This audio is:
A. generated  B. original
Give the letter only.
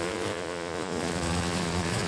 A